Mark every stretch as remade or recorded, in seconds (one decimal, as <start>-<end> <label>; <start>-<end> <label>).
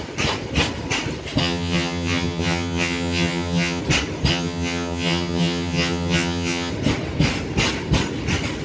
0.0-1.4 recorded; 1.4-3.8 remade; 3.8-4.3 recorded; 4.3-6.7 remade; 6.7-8.6 recorded